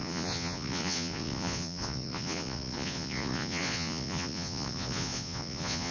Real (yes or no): no